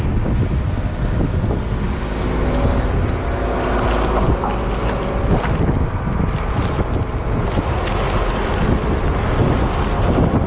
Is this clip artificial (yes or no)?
no